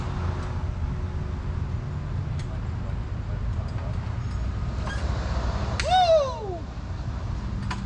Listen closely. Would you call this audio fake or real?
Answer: real